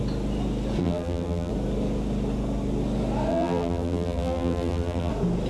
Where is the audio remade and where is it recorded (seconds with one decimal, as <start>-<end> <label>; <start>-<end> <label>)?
0.0-0.8 recorded; 0.8-1.5 remade; 1.5-3.3 recorded; 3.3-5.1 remade; 5.1-5.5 recorded